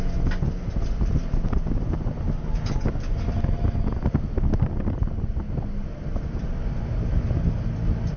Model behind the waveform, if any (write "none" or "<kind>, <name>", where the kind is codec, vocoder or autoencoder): none